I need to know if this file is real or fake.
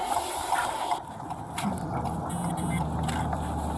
real